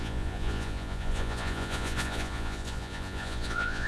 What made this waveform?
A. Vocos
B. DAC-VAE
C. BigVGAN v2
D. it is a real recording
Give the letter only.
A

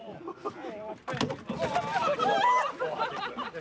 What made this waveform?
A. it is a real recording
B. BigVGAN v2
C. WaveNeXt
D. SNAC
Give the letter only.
A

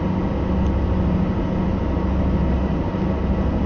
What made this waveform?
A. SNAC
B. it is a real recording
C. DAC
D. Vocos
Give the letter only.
B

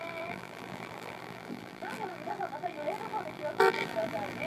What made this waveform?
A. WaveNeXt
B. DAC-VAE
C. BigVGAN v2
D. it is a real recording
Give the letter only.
C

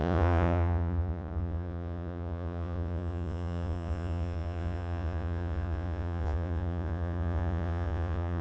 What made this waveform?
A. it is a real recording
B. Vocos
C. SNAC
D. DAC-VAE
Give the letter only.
B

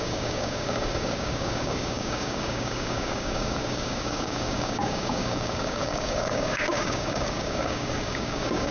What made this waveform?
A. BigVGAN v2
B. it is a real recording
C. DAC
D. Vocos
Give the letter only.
C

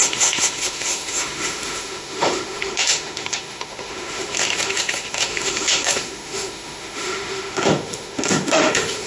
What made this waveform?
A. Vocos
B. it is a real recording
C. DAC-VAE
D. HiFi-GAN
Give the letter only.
C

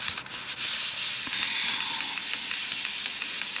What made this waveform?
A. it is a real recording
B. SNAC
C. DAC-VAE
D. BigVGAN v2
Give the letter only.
A